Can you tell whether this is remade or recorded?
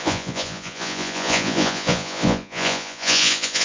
remade